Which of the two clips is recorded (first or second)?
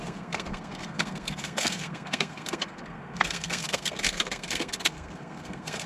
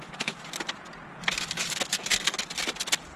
second